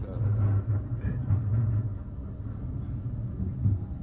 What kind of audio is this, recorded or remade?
recorded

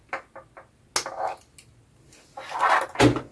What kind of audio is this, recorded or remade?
recorded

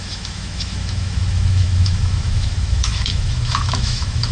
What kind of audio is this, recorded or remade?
remade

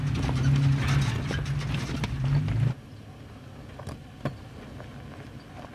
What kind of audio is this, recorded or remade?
recorded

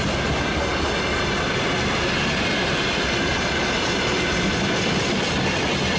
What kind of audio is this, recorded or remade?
recorded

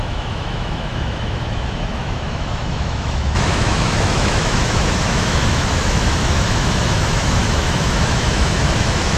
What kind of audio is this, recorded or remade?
remade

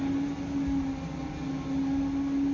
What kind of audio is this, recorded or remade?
recorded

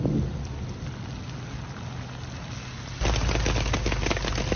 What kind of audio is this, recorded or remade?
recorded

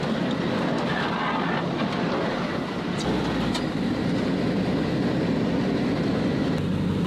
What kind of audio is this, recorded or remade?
recorded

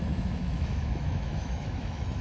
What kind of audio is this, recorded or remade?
remade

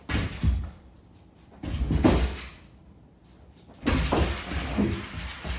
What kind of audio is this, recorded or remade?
recorded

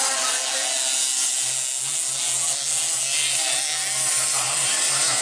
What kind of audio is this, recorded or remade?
recorded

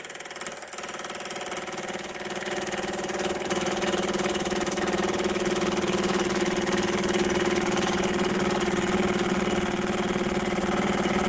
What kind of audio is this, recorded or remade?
recorded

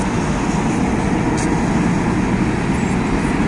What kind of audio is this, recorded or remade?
recorded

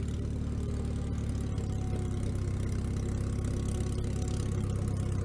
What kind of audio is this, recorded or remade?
recorded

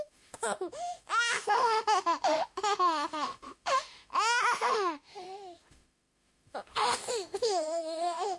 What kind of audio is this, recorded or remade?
remade